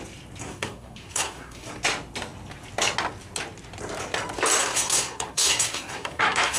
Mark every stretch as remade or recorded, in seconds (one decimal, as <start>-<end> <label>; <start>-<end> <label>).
0.0-0.4 recorded; 0.4-1.7 remade; 1.7-4.6 recorded; 4.6-6.6 remade